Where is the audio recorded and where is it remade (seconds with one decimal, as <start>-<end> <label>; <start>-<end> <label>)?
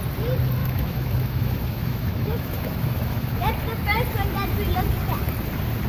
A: 0.0-0.6 recorded; 0.6-3.5 remade; 3.5-5.9 recorded